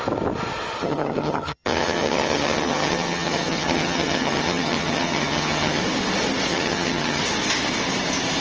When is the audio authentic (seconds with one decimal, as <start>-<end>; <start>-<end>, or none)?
0.0-0.8; 5.8-6.5; 7.2-8.4